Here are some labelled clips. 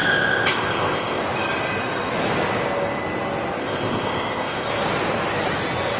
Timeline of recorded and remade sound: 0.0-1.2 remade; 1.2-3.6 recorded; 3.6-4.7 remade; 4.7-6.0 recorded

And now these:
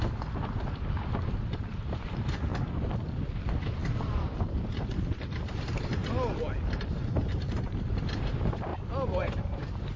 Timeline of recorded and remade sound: 0.0-2.5 remade; 2.5-3.4 recorded; 3.4-6.0 remade; 6.0-6.8 recorded; 6.8-8.7 remade; 8.7-9.3 recorded; 9.3-10.0 remade

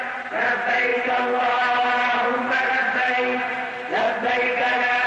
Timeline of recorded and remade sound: 0.0-5.1 recorded

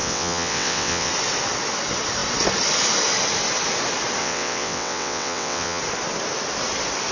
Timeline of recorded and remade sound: 0.0-1.1 remade; 1.1-4.2 recorded; 4.2-5.8 remade; 5.8-7.1 recorded

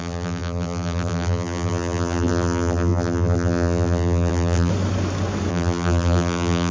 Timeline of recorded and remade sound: 0.0-4.7 remade; 4.7-5.5 recorded; 5.5-6.7 remade

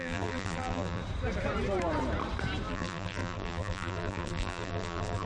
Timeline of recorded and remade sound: 0.0-1.0 remade; 1.0-2.7 recorded; 2.7-5.3 remade